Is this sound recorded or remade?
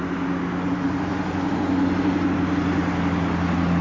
recorded